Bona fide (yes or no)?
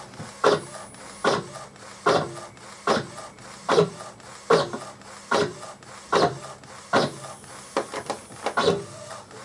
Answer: yes